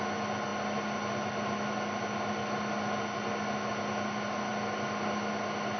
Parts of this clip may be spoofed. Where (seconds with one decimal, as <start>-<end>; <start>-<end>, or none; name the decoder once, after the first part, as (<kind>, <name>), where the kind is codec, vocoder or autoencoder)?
none